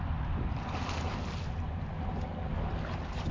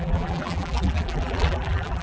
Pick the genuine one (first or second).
first